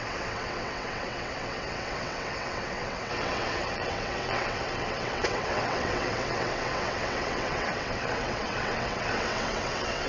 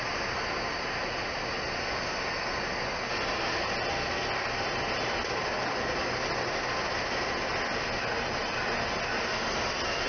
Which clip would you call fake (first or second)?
first